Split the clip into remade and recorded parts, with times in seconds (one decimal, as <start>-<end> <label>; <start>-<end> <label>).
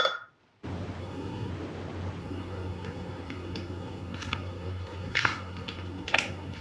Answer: 0.0-1.0 recorded; 1.0-1.5 remade; 1.5-2.2 recorded; 2.2-6.6 remade